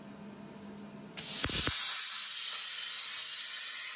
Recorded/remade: recorded